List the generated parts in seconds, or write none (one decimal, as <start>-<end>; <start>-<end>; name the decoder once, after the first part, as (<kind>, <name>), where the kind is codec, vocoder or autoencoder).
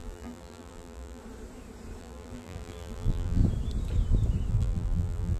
0.0-1.2 (vocoder, BigVGAN v2); 2.0-3.4; 4.5-5.4